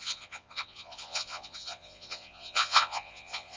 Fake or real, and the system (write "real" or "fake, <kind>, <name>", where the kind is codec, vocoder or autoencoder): fake, vocoder, Vocos